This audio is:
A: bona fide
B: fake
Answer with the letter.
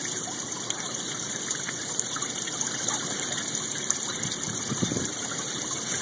B